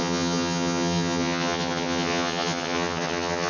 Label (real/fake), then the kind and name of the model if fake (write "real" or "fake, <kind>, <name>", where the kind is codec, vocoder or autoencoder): fake, vocoder, HiFi-GAN